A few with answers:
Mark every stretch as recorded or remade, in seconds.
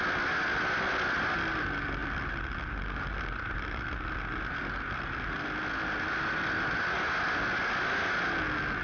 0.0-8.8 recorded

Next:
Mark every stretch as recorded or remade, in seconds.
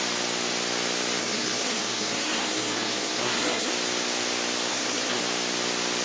0.0-1.2 recorded; 1.2-3.7 remade; 3.7-4.7 recorded; 4.7-5.2 remade; 5.2-6.0 recorded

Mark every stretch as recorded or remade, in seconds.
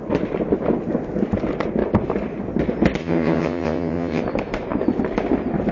0.0-3.0 recorded; 3.0-4.2 remade; 4.2-5.7 recorded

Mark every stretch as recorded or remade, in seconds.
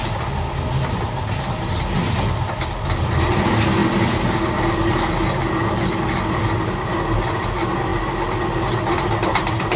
0.0-9.8 recorded